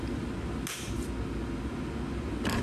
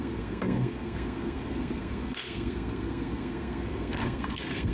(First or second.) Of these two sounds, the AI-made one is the second